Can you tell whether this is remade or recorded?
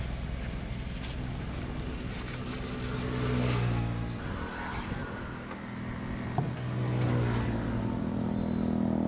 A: recorded